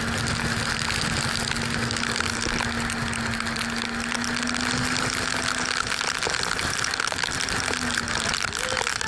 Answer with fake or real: real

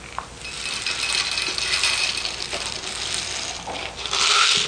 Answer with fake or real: real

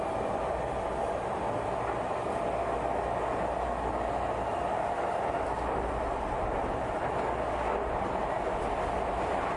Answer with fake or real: real